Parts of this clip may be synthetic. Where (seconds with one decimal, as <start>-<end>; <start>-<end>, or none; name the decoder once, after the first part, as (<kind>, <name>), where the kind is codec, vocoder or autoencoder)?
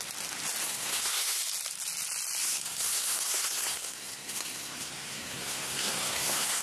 0.6-1.4 (codec, SNAC); 2.4-6.6